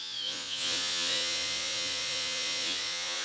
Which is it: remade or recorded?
remade